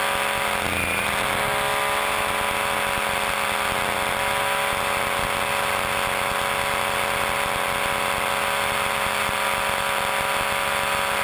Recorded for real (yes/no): yes